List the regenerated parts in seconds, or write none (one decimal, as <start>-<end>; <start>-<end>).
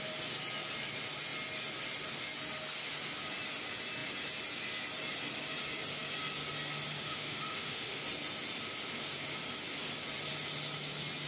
6.9-8.0